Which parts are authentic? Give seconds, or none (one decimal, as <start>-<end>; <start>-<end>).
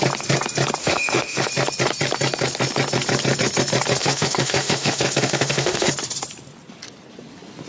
0.0-0.8; 1.5-4.0; 5.9-7.7